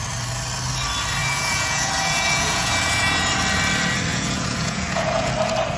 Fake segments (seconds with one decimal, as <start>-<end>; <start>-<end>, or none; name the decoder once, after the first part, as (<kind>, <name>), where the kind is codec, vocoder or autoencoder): 1.2-3.3 (vocoder, Vocos); 4.1-5.3